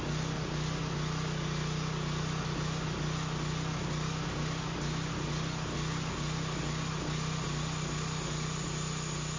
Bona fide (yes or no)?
yes